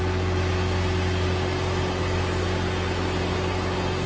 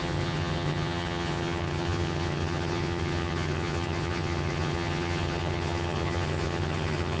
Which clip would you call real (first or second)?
first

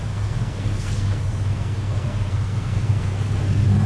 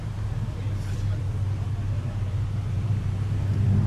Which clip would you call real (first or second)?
second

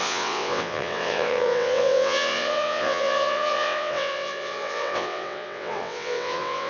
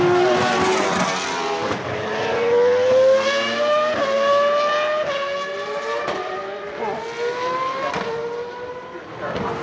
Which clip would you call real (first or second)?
second